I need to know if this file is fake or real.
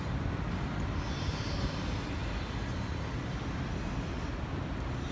real